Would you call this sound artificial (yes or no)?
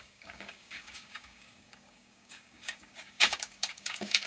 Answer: yes